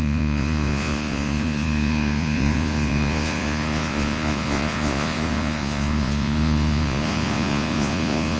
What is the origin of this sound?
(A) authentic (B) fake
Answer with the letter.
B